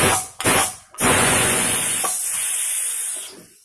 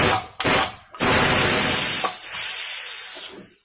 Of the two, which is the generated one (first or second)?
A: first